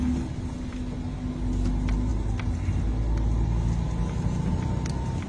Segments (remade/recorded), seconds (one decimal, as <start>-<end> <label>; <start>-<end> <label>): 0.0-5.3 recorded